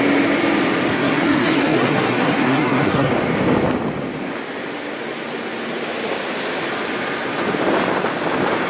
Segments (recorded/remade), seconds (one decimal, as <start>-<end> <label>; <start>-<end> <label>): 0.0-0.9 recorded; 0.9-3.1 remade; 3.1-8.7 recorded